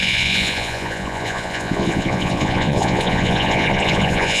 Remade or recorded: remade